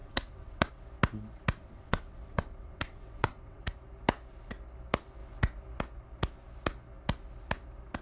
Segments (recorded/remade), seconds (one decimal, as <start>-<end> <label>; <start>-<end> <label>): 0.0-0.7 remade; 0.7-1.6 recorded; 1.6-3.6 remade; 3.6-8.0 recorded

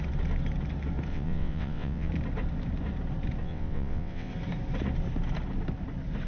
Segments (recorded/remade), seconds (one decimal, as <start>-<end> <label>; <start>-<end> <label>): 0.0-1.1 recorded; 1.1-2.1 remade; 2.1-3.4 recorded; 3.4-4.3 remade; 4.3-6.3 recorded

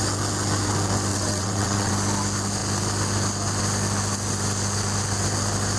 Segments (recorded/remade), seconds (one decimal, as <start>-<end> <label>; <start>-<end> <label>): 0.0-1.1 recorded; 1.1-1.9 remade; 1.9-5.8 recorded